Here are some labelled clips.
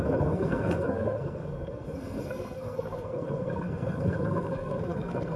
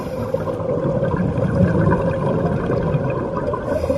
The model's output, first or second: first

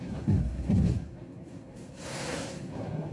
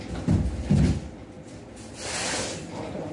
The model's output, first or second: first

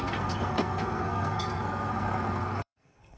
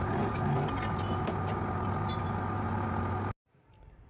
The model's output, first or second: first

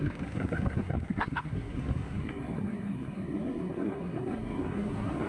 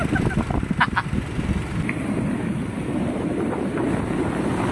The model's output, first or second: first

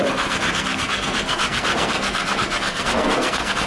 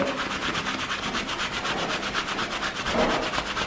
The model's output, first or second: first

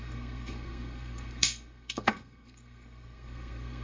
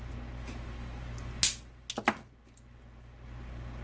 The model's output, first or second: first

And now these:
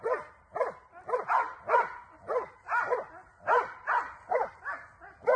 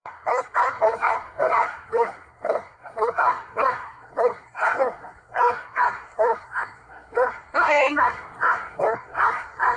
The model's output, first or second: second